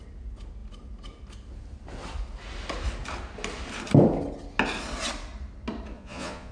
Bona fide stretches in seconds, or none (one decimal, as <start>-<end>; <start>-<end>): 0.0-5.9